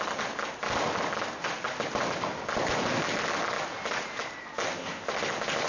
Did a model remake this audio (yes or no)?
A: no